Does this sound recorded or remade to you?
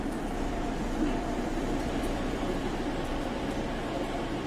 remade